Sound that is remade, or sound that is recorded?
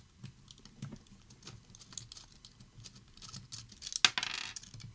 recorded